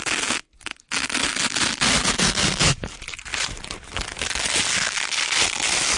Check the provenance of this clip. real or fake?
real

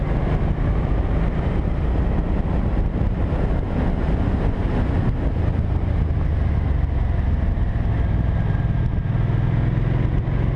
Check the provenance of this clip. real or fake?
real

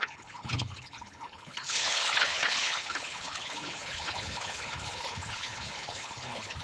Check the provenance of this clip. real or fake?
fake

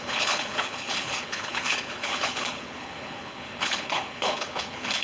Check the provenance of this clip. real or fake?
fake